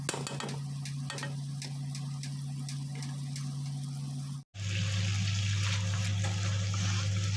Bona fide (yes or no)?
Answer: yes